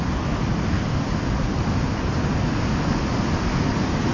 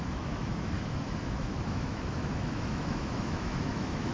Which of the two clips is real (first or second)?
first